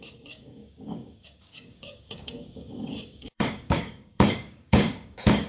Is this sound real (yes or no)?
no